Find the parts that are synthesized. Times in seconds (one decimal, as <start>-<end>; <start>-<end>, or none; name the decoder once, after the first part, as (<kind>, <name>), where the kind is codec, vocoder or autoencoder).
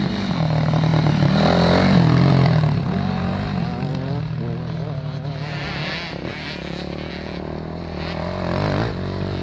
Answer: none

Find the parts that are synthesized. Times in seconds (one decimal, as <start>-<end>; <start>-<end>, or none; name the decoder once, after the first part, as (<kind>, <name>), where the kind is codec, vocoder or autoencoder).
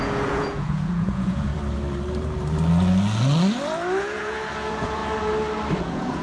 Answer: 0.0-1.5 (vocoder, Vocos); 4.0-5.0; 5.8-6.2